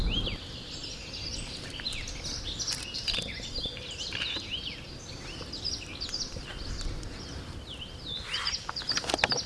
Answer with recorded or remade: recorded